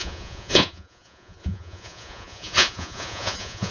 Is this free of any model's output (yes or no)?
no